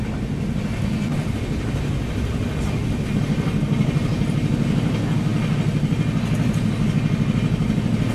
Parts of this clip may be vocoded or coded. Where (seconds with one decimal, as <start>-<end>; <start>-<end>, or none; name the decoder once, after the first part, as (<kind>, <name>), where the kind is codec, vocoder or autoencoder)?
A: none